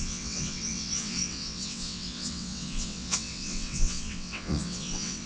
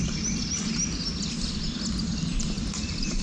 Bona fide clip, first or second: second